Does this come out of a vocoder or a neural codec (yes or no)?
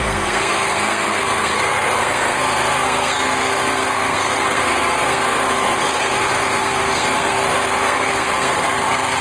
yes